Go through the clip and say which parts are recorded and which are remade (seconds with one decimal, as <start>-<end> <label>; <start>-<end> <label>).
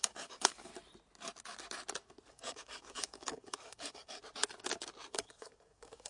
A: 0.0-0.7 remade; 0.7-2.3 recorded; 2.3-4.2 remade; 4.2-5.1 recorded; 5.1-6.1 remade